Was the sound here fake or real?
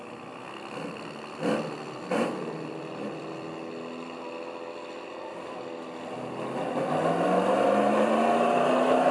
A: real